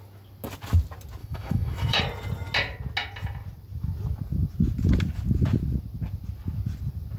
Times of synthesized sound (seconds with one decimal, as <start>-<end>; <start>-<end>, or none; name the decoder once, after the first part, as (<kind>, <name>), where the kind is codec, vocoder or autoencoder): 1.2-2.0 (autoencoder, DAC-VAE)